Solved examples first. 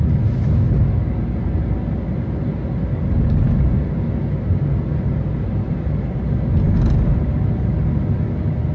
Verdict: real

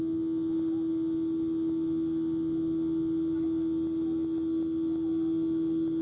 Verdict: real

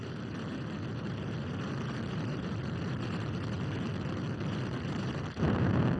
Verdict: fake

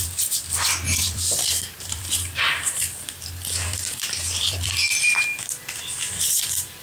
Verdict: fake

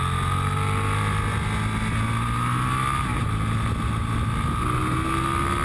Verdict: real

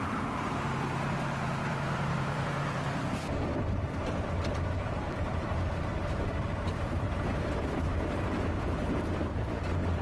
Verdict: fake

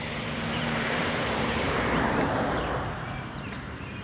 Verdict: fake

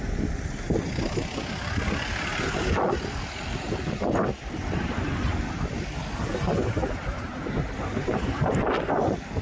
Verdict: fake